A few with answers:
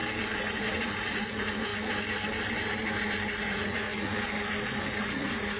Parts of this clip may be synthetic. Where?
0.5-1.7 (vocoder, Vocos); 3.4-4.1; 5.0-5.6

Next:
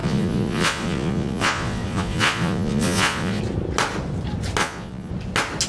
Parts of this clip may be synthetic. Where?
0.0-3.4 (vocoder, Vocos); 4.6-5.1

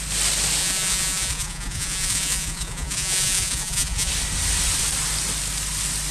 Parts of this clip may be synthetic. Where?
0.6-4.1 (vocoder, Vocos)

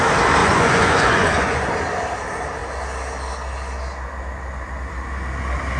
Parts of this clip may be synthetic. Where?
0.4-1.7 (vocoder, Vocos)

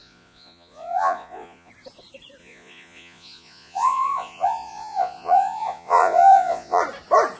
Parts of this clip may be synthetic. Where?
0.0-1.7 (vocoder, Vocos); 2.4-6.8